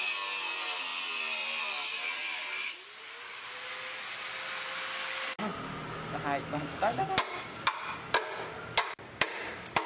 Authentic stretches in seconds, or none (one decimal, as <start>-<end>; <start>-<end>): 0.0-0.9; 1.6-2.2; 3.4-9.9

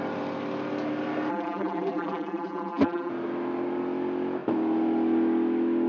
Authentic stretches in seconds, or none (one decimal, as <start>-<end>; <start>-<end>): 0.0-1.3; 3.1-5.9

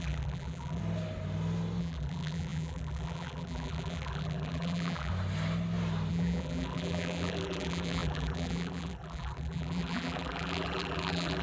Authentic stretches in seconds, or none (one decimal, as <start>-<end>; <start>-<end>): 0.8-1.8; 5.1-6.1

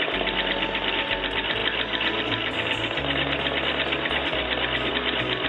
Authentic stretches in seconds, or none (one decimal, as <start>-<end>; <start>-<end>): 0.0-5.5

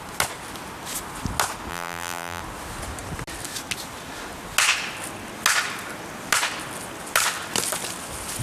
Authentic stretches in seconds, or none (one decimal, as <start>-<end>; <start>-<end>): 0.0-1.7; 2.4-8.4

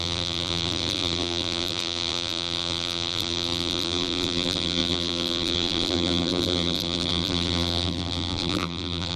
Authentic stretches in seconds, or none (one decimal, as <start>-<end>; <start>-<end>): none

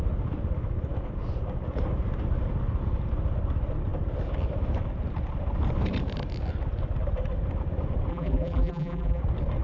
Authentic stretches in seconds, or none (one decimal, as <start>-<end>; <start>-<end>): 0.0-8.1; 9.2-9.6

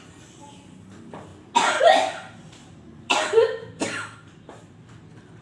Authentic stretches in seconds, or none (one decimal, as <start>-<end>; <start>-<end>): 0.0-2.6; 4.6-5.4